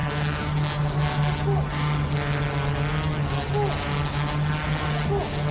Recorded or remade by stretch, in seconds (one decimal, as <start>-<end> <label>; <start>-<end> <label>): 0.0-5.5 recorded